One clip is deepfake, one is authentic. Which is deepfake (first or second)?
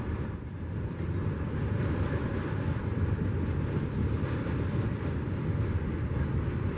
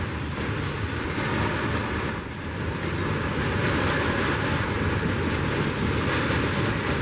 first